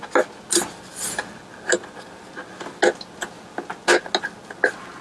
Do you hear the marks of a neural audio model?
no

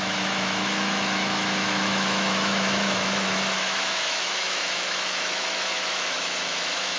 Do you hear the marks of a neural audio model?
yes